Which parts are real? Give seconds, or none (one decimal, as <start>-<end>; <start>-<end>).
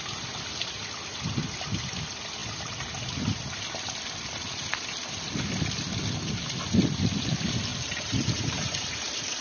0.0-7.7